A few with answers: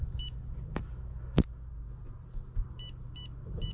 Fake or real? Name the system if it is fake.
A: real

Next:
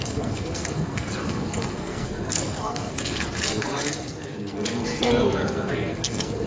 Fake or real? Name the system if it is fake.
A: fake, codec, SNAC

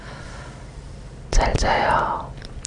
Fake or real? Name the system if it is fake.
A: real